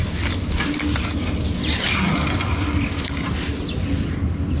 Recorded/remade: recorded